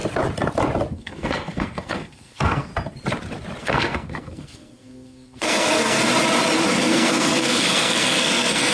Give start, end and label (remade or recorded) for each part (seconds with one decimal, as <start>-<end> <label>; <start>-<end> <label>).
0.0-0.9 recorded; 0.9-2.7 remade; 2.7-3.6 recorded; 3.6-6.1 remade; 6.1-6.7 recorded; 6.7-8.7 remade